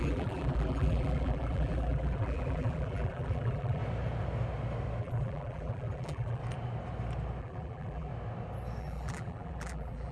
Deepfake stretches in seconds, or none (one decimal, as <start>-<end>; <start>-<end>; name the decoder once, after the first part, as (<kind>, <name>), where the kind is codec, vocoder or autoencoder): 0.0-3.8 (vocoder, BigVGAN v2); 5.0-6.4; 7.4-8.1; 8.8-10.1

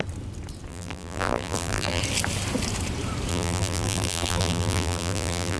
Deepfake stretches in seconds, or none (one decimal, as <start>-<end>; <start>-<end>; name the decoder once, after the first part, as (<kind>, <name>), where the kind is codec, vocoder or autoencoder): 0.7-2.0 (vocoder, BigVGAN v2); 3.3-5.6